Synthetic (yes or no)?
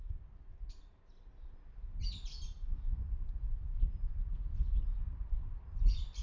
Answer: no